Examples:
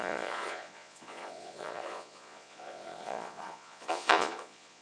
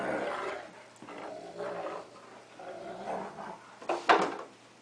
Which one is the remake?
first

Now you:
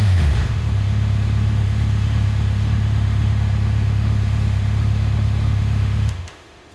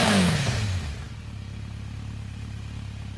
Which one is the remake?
first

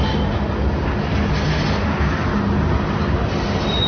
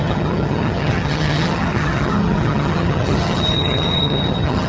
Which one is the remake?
second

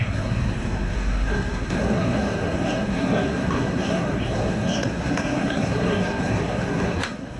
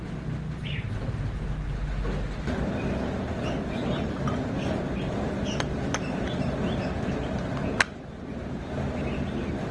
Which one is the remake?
first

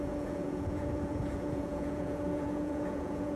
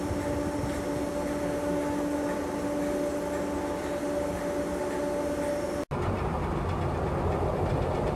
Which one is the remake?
first